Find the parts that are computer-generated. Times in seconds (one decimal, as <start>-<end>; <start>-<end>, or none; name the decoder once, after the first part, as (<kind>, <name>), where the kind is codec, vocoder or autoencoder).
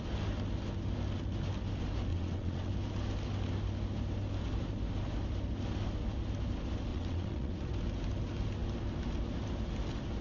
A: 2.1-2.7 (vocoder, WaveNeXt); 6.9-7.7